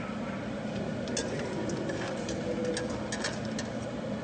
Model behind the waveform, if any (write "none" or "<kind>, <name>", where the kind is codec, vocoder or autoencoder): none